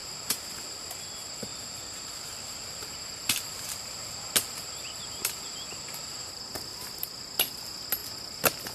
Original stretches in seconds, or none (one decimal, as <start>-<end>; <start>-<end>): 0.6-1.5; 6.4-8.7